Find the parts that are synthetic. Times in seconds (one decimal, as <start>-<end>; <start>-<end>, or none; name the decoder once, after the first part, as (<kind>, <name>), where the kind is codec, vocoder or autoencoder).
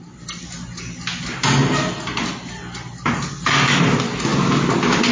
none